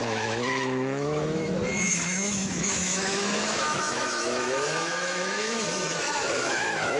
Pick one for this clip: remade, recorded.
remade